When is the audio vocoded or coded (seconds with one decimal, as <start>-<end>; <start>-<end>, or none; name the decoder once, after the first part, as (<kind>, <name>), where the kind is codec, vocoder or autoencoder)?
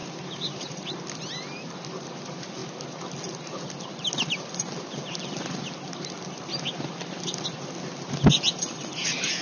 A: none